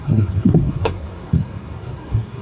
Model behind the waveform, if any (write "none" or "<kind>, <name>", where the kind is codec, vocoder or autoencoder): codec, SNAC